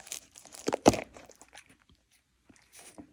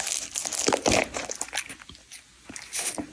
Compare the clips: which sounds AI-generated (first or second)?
first